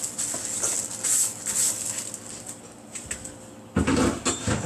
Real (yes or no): yes